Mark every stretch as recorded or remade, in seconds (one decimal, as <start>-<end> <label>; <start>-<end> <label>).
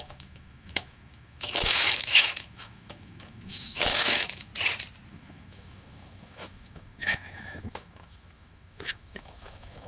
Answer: 0.0-4.5 remade; 4.5-5.1 recorded; 5.1-9.9 remade